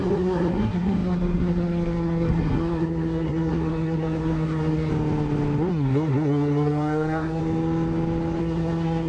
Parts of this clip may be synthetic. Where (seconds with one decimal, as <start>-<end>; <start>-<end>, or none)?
0.0-4.9; 5.7-7.4; 8.4-9.1